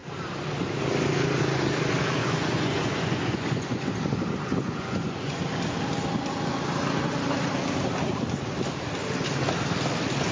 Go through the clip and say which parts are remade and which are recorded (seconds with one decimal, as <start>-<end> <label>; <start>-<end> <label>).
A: 0.0-2.2 recorded; 2.2-3.9 remade; 3.9-4.5 recorded; 4.5-5.4 remade; 5.4-10.3 recorded